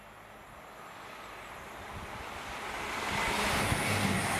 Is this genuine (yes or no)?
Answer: yes